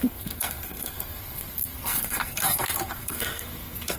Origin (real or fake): fake